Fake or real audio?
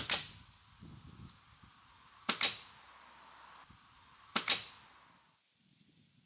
real